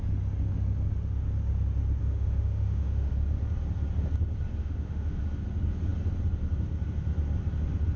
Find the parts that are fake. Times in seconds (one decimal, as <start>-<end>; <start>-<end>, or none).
2.0-3.1; 4.6-5.2